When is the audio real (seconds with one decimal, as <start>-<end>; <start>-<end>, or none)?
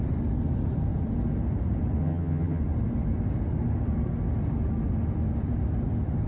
0.0-2.0; 2.6-6.3